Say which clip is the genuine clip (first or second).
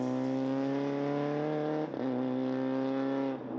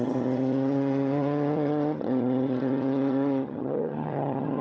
first